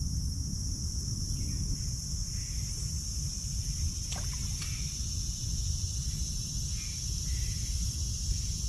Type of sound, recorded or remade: recorded